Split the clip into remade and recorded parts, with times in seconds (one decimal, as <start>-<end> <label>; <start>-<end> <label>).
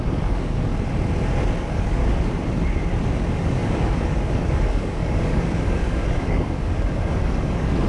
0.0-0.7 remade; 0.7-1.6 recorded; 1.6-2.0 remade; 2.0-3.1 recorded; 3.1-7.9 remade